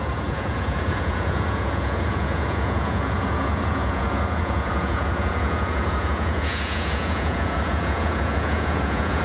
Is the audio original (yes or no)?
no